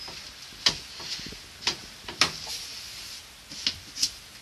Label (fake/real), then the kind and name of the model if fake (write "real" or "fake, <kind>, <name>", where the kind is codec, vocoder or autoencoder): real